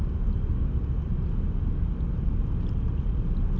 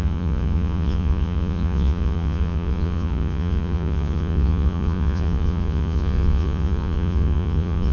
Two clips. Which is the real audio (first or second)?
first